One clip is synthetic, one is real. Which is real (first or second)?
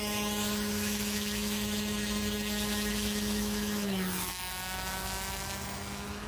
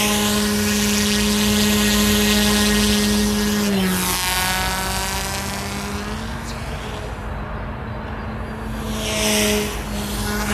second